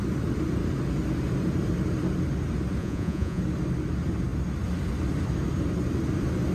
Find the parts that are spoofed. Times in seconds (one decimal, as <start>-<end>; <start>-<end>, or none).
2.8-3.4